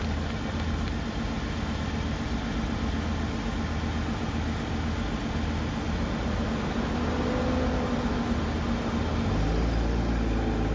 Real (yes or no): yes